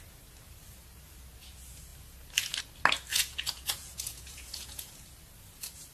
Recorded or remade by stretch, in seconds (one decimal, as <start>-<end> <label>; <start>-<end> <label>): 0.0-3.1 recorded; 3.1-4.9 remade; 4.9-5.9 recorded